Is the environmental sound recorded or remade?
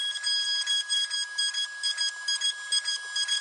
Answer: recorded